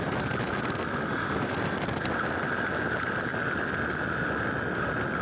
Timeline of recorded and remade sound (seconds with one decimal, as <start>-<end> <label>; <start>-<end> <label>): 0.0-1.1 recorded; 1.1-1.9 remade; 1.9-5.2 recorded